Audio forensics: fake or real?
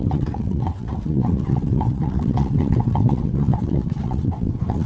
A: fake